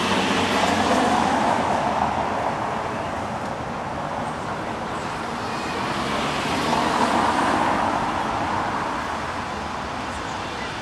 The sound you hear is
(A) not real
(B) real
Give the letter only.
B